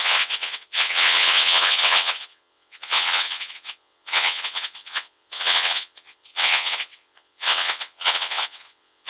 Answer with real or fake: fake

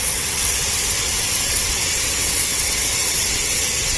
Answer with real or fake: fake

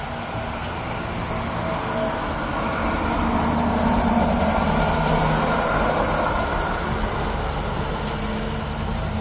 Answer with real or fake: real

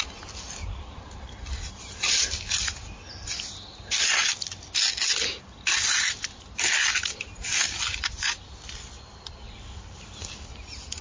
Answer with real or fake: real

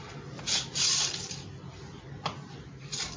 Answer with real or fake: real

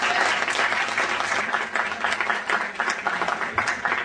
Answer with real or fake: real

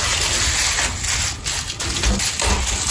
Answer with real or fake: real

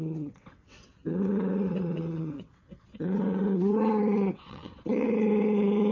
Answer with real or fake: fake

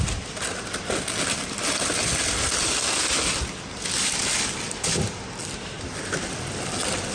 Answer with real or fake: real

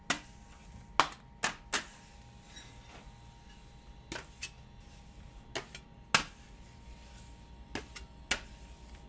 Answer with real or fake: real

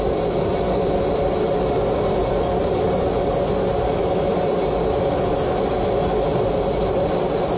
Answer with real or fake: real